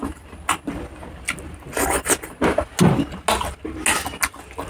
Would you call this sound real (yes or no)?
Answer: yes